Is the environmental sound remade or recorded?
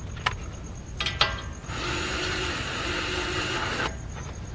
recorded